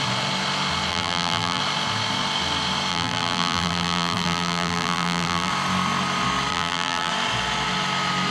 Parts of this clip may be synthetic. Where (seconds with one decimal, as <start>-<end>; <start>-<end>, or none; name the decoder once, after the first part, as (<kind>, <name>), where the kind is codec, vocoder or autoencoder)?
0.9-1.6 (vocoder, BigVGAN v2); 2.9-5.5; 6.5-7.1